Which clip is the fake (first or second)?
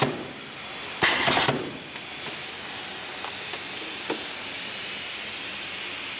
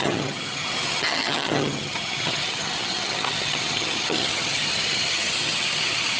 second